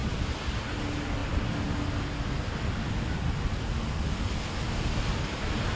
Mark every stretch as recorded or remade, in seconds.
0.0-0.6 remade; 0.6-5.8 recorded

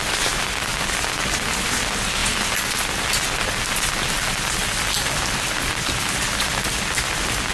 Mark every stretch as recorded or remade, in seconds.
0.0-7.5 recorded

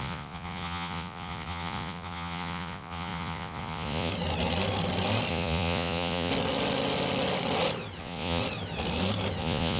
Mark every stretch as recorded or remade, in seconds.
0.0-4.1 remade; 4.1-5.3 recorded; 5.3-6.3 remade; 6.3-8.0 recorded; 8.0-8.4 remade; 8.4-9.4 recorded; 9.4-9.8 remade

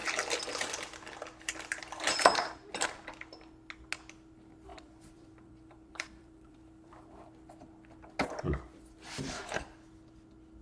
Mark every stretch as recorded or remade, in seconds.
0.0-2.4 remade; 2.4-4.7 recorded; 4.7-7.7 remade; 7.7-10.6 recorded

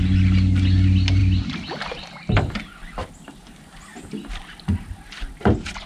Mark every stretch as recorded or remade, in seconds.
0.0-5.9 recorded

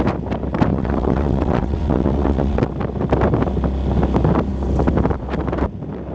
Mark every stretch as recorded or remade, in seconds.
0.0-0.7 recorded; 0.7-2.7 remade; 2.7-6.1 recorded